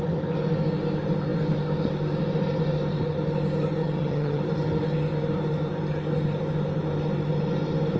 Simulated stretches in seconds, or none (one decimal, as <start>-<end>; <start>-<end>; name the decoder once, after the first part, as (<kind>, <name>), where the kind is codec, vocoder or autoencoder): 3.8-4.4 (vocoder, HiFi-GAN)

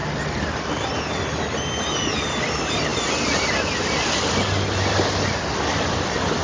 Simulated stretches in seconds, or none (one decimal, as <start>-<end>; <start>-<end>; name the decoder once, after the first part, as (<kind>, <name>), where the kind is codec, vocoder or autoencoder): none